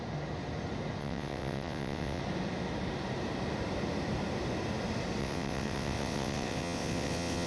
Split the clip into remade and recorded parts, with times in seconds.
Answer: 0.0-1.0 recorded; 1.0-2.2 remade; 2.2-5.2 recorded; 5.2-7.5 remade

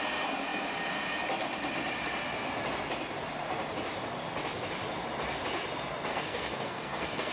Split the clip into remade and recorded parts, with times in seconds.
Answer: 0.0-6.1 recorded; 6.1-7.3 remade

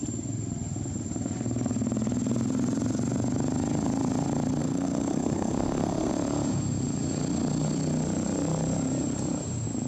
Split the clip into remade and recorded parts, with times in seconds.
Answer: 0.0-4.6 recorded; 4.6-6.1 remade; 6.1-9.9 recorded

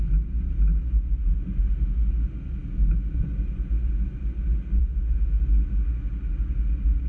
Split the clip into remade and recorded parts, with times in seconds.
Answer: 0.0-1.2 recorded; 1.2-2.1 remade; 2.1-4.8 recorded; 4.8-5.4 remade; 5.4-7.1 recorded